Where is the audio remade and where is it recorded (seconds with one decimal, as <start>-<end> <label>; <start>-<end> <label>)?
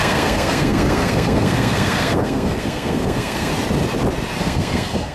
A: 0.0-3.5 remade; 3.5-4.4 recorded; 4.4-5.1 remade